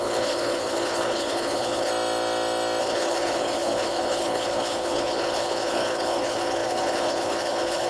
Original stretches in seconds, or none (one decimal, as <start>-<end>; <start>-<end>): 1.9-2.8